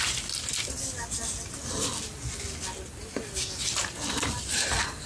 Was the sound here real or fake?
real